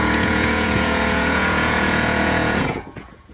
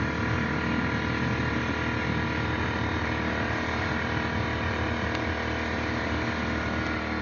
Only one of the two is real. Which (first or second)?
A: second